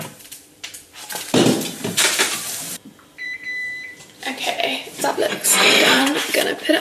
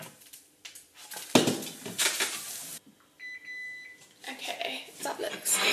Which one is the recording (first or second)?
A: second